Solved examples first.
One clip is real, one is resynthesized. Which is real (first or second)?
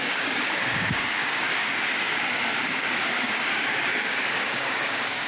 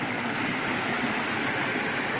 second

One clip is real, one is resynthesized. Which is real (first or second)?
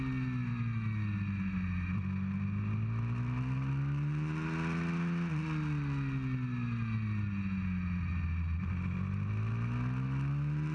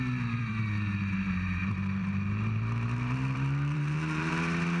first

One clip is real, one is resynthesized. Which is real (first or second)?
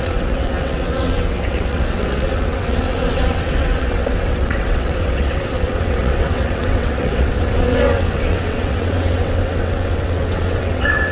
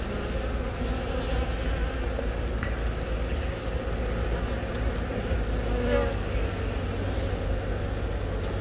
second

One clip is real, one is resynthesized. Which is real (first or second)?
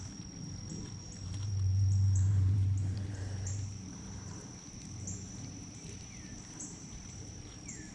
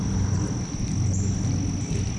second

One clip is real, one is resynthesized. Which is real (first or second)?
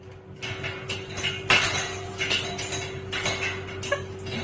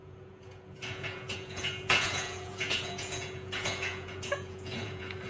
first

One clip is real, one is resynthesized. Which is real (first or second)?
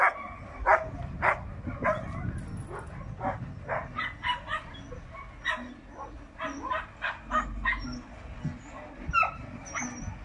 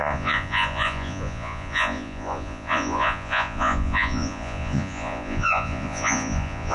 first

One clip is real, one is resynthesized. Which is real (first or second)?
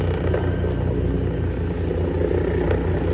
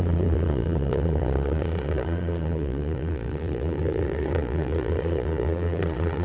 first